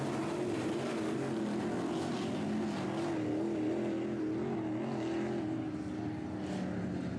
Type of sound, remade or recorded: recorded